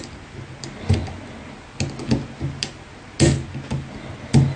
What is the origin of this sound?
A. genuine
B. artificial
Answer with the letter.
A